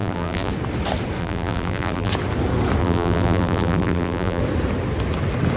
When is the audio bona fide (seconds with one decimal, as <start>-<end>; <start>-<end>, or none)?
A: 0.5-1.2; 2.1-2.8; 4.4-5.6